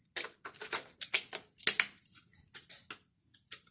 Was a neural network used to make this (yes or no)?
no